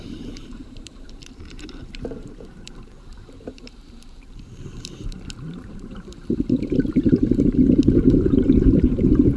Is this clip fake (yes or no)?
yes